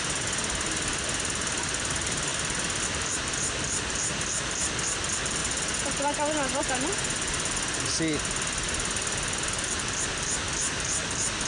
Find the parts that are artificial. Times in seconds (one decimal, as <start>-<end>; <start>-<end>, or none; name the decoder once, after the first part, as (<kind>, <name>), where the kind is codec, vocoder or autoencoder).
none